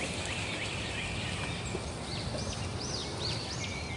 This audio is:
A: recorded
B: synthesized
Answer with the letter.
A